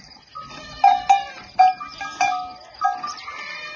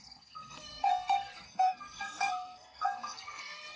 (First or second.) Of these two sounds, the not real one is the second